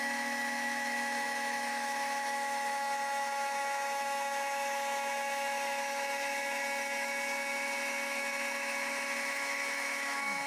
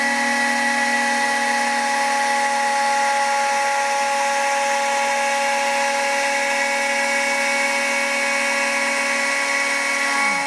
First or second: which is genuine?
second